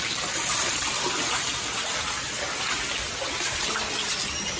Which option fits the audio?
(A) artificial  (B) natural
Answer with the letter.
B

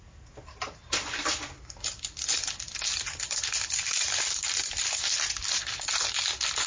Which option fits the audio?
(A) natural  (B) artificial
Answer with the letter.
A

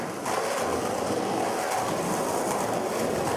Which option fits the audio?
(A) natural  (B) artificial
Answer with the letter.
A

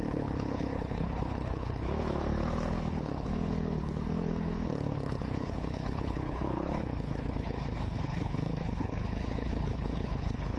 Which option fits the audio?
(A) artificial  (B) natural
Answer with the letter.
A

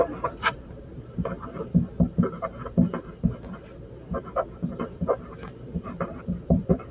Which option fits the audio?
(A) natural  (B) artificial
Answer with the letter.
B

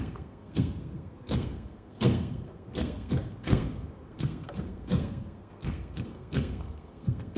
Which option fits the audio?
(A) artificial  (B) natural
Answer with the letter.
A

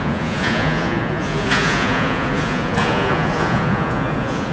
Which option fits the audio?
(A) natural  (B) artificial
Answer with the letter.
B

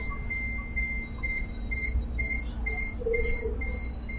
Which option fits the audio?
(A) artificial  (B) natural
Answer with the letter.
B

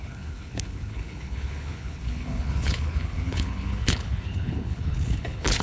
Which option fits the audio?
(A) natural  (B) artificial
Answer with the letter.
B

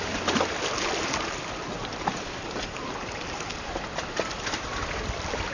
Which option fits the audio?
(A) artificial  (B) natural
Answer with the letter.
B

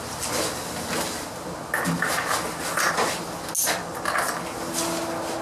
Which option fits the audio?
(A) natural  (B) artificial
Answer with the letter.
A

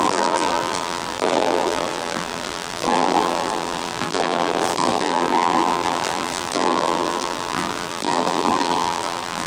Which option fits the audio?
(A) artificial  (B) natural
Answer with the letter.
A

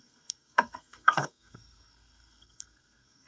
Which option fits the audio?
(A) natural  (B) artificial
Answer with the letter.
B